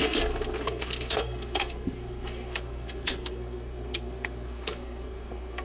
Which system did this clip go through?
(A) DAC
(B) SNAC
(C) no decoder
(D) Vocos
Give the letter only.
B